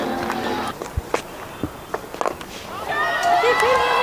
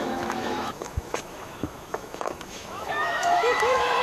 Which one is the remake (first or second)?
second